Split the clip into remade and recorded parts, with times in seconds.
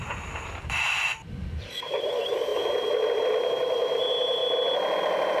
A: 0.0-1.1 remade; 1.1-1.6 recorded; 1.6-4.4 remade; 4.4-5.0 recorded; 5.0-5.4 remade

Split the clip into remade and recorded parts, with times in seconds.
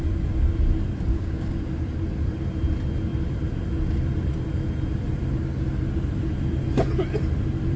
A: 0.0-1.1 recorded; 1.1-1.6 remade; 1.6-7.8 recorded